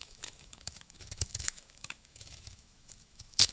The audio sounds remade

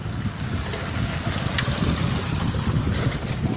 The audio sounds recorded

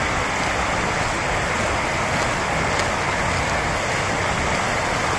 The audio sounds recorded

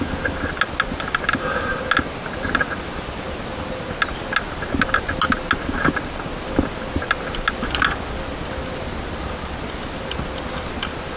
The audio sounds recorded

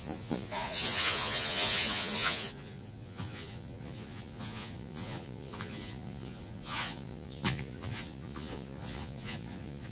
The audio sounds remade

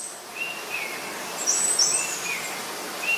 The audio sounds recorded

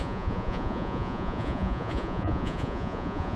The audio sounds remade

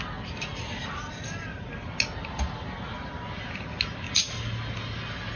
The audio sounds recorded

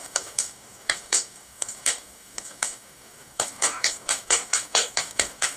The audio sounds remade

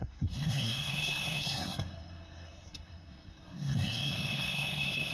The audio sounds remade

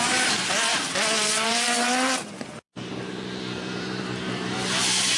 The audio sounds remade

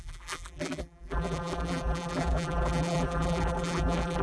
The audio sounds remade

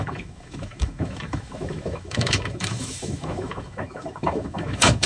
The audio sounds remade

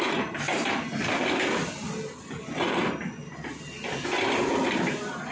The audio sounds recorded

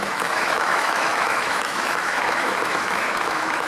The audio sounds remade